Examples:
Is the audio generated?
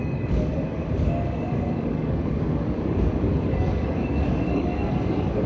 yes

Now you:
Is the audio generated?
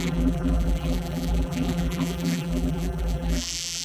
yes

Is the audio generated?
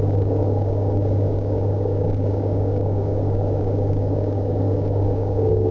yes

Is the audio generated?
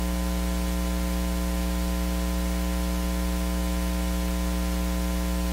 no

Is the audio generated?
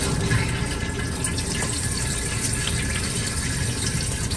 no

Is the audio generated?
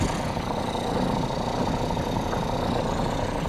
no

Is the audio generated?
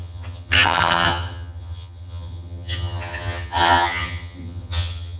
yes